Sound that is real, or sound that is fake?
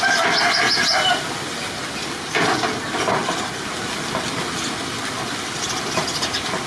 real